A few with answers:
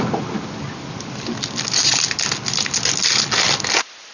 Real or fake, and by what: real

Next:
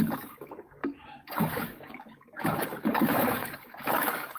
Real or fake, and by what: fake, codec, DAC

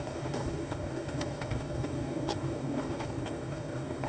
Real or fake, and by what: fake, codec, DAC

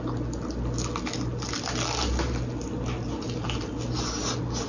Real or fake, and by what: real